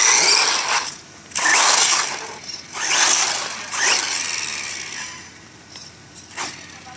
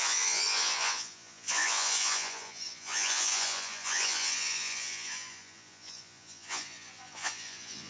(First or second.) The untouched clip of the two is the first